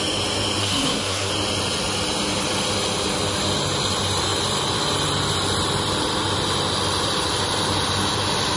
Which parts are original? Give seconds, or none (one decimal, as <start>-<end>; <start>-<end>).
0.0-0.6; 1.3-8.6